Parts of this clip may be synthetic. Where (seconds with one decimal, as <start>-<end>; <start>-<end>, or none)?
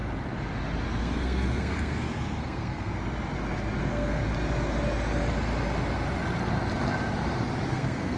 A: 1.0-2.9; 3.8-4.2; 7.7-8.2